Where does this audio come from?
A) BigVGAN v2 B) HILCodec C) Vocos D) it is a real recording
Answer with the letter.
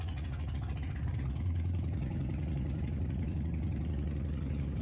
C